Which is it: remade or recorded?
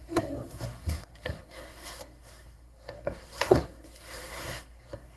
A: remade